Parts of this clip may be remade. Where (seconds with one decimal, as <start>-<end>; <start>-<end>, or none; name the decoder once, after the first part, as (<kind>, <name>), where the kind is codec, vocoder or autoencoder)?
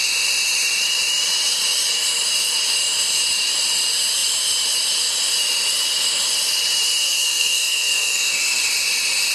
7.0-8.7 (codec, SNAC)